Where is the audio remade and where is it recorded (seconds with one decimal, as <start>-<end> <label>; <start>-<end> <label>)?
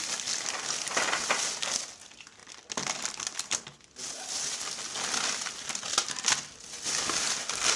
0.0-7.8 recorded